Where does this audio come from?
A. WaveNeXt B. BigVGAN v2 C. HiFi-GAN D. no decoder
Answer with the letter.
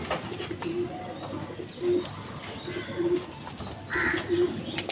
D